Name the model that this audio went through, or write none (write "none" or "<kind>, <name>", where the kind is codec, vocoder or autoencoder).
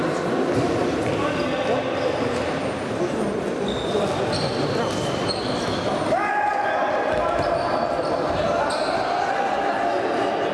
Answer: none